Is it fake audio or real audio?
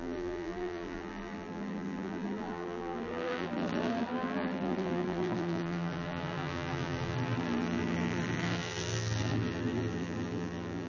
fake